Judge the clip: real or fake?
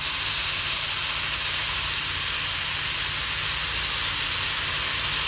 real